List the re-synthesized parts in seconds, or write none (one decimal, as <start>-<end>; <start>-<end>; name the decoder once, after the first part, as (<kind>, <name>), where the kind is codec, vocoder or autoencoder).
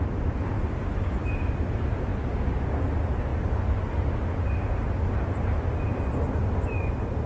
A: none